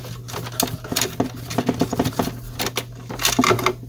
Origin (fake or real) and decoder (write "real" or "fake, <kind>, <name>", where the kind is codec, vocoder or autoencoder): real